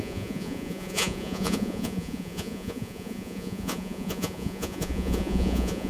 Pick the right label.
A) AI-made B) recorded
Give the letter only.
A